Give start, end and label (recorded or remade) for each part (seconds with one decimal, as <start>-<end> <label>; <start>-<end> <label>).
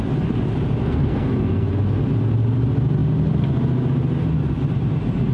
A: 0.0-0.8 recorded; 0.8-1.7 remade; 1.7-5.3 recorded